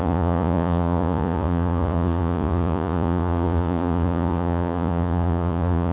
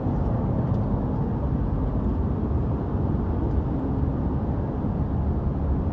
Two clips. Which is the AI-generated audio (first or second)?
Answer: first